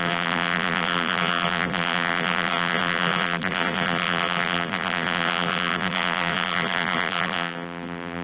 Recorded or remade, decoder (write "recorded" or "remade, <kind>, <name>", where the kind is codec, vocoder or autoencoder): remade, vocoder, BigVGAN v2